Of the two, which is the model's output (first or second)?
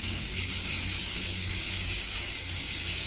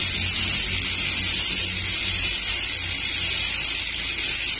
first